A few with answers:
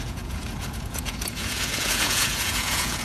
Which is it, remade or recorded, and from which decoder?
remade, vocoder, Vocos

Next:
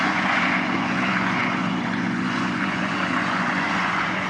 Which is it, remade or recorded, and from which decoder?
remade, vocoder, Vocos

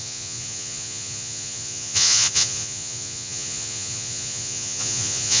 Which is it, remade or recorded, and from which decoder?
remade, vocoder, Vocos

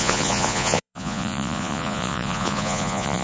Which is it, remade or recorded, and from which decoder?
remade, vocoder, Vocos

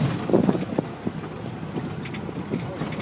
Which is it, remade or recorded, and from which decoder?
recorded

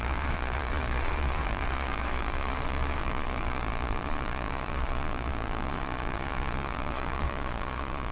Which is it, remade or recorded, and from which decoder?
remade, vocoder, Vocos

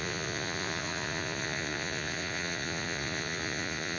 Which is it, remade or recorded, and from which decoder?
remade, vocoder, Vocos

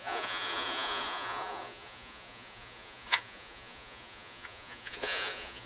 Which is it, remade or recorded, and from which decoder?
remade, vocoder, Vocos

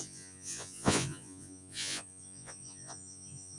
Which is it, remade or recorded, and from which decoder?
remade, vocoder, Vocos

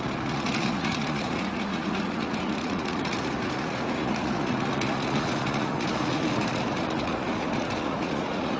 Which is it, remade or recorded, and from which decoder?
remade, vocoder, Vocos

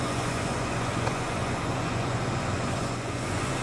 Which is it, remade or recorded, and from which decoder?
remade, vocoder, Vocos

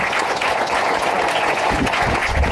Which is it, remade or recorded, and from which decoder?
remade, vocoder, Vocos